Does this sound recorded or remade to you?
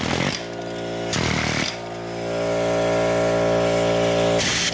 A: recorded